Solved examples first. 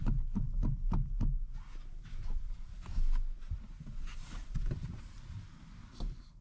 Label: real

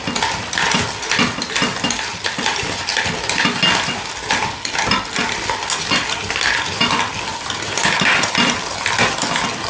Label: real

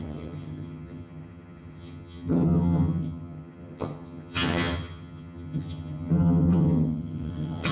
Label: fake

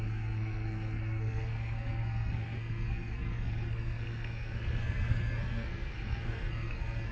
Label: fake